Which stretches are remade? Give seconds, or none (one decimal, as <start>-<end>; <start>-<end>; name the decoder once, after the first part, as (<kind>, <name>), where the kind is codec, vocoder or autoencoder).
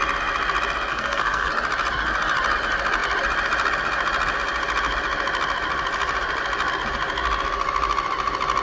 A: 0.9-1.5 (codec, SNAC)